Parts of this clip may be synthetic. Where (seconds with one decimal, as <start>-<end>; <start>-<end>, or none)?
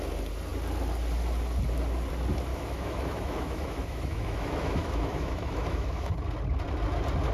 2.5-6.1